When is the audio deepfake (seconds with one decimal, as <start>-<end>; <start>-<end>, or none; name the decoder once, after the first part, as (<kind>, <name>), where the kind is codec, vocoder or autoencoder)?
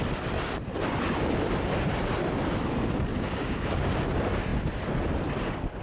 3.1-3.9 (codec, DAC)